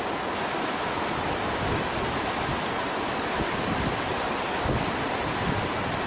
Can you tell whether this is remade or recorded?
recorded